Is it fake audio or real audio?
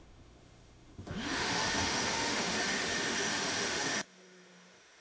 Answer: fake